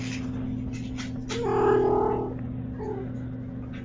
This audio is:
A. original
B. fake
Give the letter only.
A